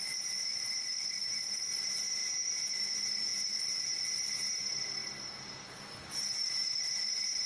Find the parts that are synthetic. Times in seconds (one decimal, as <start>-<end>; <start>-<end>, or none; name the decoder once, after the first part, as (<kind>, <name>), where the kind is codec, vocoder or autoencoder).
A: 0.0-2.2 (vocoder, BigVGAN v2); 2.7-3.3; 4.1-7.5

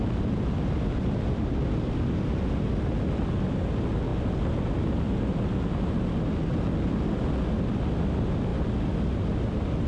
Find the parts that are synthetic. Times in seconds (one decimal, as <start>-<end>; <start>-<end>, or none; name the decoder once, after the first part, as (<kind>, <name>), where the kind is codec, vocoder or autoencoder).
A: none

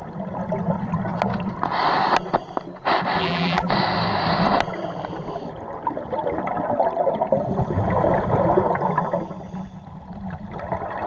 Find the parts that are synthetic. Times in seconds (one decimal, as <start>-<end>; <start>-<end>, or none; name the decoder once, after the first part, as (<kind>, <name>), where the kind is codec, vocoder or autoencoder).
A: 3.2-3.7 (vocoder, BigVGAN v2)

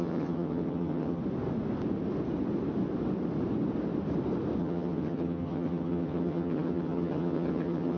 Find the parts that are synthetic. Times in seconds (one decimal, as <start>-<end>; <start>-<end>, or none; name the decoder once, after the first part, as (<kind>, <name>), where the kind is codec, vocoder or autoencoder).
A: 0.0-1.2 (vocoder, HiFi-GAN); 4.6-8.0

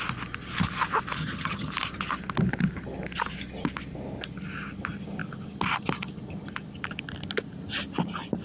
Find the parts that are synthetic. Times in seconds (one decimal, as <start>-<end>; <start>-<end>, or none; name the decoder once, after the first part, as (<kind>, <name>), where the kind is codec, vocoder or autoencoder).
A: 1.2-1.7 (vocoder, HiFi-GAN)

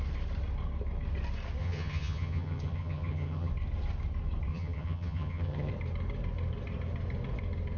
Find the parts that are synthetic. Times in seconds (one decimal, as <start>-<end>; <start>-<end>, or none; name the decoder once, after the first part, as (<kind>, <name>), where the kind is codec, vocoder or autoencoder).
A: 1.6-3.5 (vocoder, HiFi-GAN); 4.5-5.7

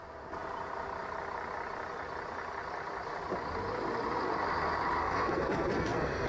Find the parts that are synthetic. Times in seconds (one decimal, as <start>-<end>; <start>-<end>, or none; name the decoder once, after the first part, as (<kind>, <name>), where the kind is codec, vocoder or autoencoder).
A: 5.0-6.3 (codec, SNAC)

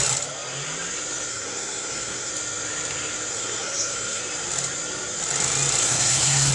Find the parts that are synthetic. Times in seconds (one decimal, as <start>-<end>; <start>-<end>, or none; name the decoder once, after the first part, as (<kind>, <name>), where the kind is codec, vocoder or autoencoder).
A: 1.3-2.3 (codec, SNAC); 3.3-4.2; 5.8-6.5